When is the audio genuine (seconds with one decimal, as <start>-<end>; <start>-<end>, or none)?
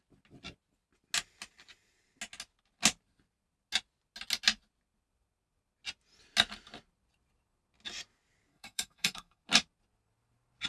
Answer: 0.0-8.5; 9.4-10.7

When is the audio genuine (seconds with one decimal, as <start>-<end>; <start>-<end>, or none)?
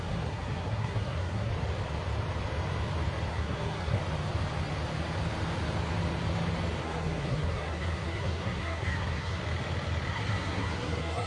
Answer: 1.5-3.3; 4.0-6.8; 9.4-10.1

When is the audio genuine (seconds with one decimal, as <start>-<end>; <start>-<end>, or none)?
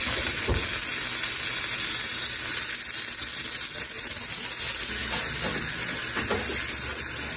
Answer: 0.0-7.4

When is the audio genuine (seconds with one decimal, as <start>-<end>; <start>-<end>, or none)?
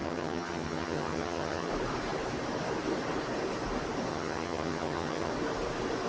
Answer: 1.7-4.1; 5.3-6.1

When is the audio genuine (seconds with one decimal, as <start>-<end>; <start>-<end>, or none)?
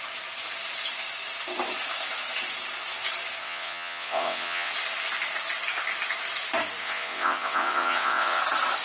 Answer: 0.0-3.4; 4.7-6.8; 8.4-8.8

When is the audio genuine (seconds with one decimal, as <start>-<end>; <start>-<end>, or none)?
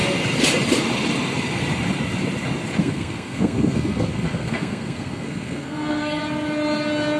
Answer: 0.0-2.8; 6.2-7.2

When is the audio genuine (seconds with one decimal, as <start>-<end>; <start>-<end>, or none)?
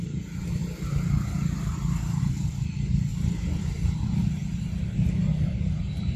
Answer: 0.6-2.2; 3.1-3.6; 4.4-5.3